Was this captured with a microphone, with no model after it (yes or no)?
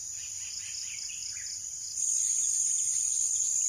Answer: yes